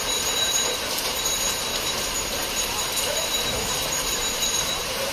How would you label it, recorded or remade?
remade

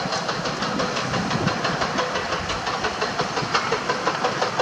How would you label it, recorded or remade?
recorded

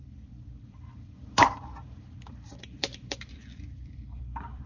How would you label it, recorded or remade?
remade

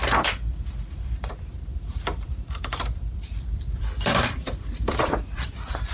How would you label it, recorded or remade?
remade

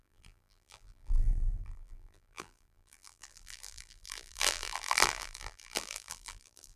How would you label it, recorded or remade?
remade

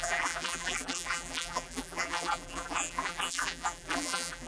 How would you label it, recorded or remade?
remade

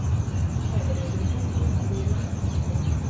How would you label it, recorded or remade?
recorded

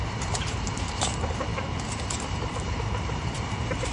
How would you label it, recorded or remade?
remade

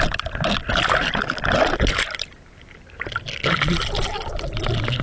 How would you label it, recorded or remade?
recorded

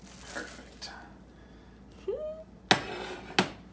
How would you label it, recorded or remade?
recorded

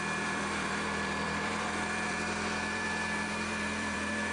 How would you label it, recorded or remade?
remade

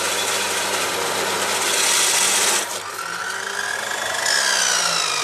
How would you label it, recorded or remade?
recorded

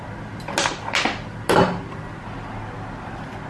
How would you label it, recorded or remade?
recorded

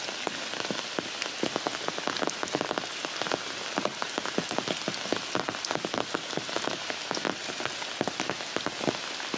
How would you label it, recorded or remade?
recorded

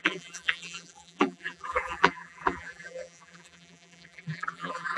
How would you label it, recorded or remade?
remade